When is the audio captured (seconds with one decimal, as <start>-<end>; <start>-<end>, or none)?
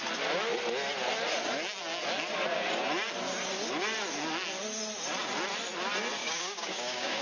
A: 0.0-6.2